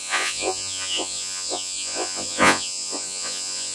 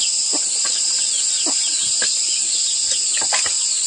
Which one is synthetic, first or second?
first